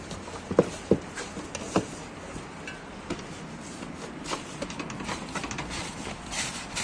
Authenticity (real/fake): real